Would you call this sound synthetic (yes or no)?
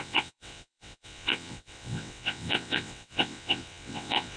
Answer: yes